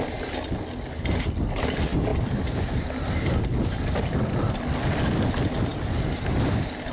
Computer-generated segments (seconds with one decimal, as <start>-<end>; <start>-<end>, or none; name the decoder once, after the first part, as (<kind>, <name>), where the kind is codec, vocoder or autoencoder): none